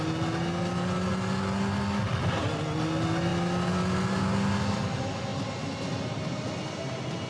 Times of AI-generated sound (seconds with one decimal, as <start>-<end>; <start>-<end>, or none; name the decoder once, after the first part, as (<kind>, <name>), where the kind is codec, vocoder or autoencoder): none